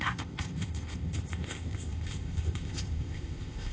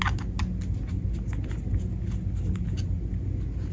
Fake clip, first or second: first